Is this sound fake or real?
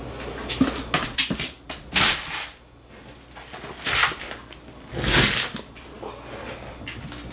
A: real